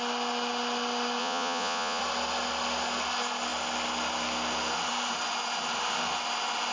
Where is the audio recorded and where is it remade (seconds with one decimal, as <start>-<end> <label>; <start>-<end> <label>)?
0.0-1.2 recorded; 1.2-2.0 remade; 2.0-6.7 recorded